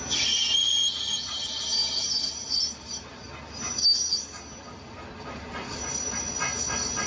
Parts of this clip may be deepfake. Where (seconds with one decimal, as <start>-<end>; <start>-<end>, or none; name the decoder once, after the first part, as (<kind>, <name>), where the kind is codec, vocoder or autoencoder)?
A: none